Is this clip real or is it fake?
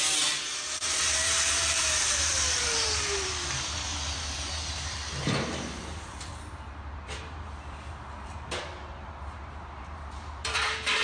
fake